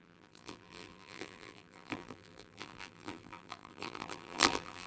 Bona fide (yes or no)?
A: no